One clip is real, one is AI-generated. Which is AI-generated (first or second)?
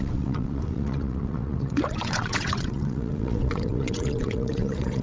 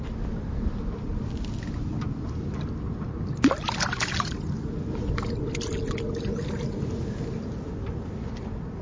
first